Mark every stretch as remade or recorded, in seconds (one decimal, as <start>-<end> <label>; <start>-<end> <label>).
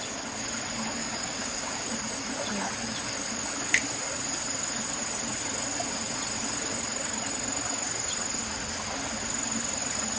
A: 0.0-1.0 recorded; 1.0-1.8 remade; 1.8-10.2 recorded